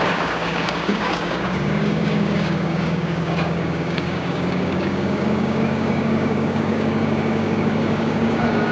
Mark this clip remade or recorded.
remade